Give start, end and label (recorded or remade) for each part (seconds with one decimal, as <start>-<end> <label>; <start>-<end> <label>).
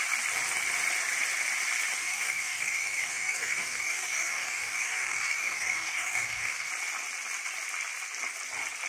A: 0.0-2.0 recorded; 2.0-6.7 remade; 6.7-8.9 recorded